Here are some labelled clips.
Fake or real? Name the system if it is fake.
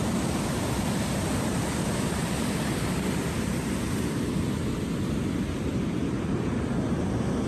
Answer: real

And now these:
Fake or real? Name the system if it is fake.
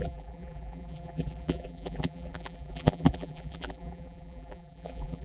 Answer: fake, vocoder, BigVGAN v2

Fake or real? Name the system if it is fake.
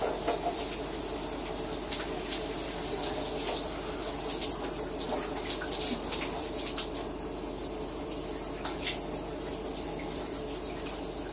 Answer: fake, vocoder, BigVGAN v2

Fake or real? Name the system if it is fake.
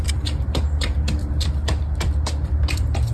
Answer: fake, vocoder, BigVGAN v2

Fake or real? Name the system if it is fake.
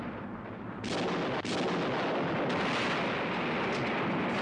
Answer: real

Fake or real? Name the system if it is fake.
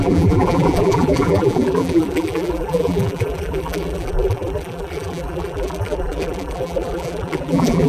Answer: fake, vocoder, BigVGAN v2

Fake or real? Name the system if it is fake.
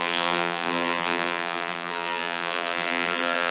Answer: fake, vocoder, BigVGAN v2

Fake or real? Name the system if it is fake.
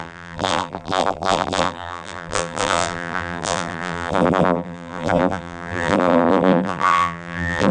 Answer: fake, vocoder, BigVGAN v2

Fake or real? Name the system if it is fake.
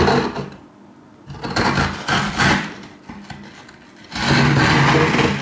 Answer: real